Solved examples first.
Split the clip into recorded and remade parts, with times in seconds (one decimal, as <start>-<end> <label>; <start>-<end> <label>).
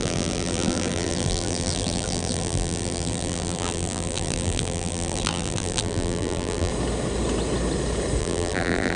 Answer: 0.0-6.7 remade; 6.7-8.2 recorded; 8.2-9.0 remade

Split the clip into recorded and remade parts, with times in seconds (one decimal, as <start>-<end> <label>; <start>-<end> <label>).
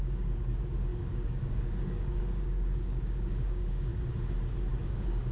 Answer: 0.0-3.9 remade; 3.9-4.7 recorded; 4.7-5.3 remade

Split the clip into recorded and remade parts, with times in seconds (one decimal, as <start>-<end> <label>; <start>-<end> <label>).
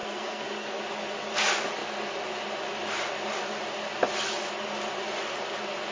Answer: 0.0-0.8 remade; 0.8-5.9 recorded